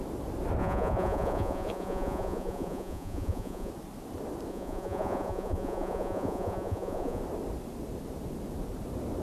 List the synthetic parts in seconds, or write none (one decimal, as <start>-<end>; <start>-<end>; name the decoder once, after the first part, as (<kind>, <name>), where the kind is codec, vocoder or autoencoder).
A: 0.6-3.7 (vocoder, Vocos); 4.5-7.2